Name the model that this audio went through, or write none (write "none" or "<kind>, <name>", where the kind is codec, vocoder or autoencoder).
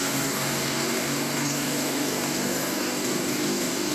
codec, DAC